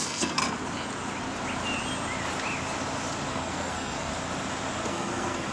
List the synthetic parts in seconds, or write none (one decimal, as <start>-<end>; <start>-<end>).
0.0-0.4; 3.3-4.1; 4.9-5.5